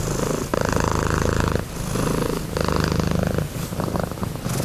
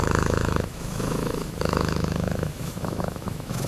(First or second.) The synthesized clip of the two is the second